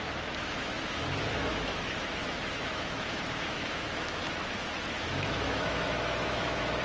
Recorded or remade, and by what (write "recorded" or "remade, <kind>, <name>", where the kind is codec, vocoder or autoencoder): remade, autoencoder, DAC-VAE